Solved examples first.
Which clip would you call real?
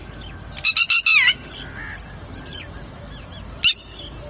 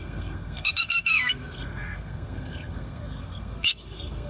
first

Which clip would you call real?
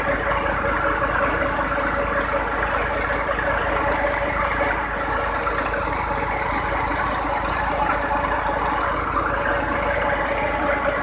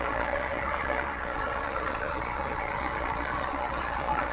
first